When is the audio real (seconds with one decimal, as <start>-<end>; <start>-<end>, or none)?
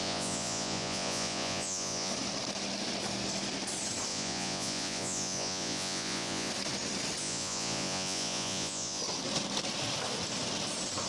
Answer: 2.1-4.1; 6.5-7.2; 9.0-11.1